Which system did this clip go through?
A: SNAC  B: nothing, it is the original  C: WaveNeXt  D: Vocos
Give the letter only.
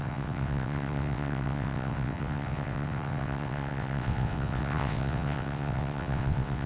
C